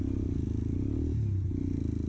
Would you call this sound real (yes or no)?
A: yes